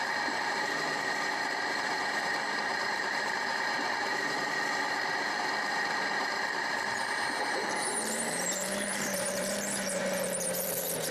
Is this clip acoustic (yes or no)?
no